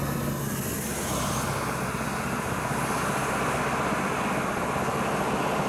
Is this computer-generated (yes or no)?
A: no